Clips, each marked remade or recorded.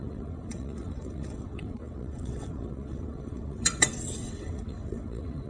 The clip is remade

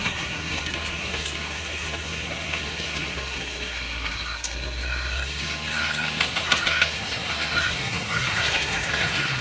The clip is remade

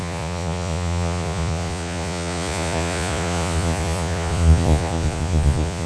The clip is remade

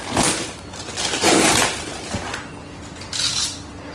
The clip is recorded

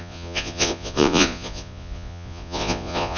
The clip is remade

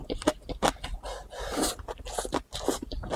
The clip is recorded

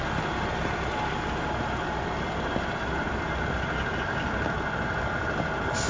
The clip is recorded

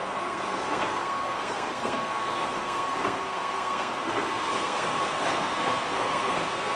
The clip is remade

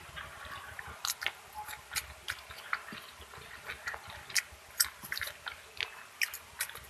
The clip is recorded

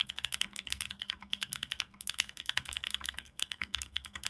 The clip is remade